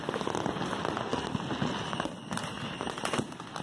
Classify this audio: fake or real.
real